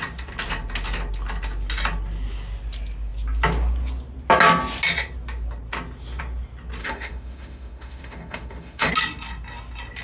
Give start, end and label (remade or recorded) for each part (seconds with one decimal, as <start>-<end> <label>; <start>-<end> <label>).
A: 0.0-6.8 recorded; 6.8-8.9 remade; 8.9-10.0 recorded